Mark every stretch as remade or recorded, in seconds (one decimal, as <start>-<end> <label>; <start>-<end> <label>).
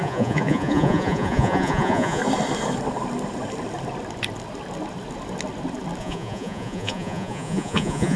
0.0-2.2 remade; 2.2-6.0 recorded; 6.0-8.2 remade